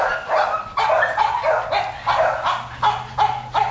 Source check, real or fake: real